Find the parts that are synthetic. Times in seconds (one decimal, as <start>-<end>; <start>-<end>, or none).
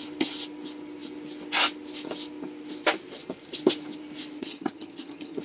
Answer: 4.4-5.4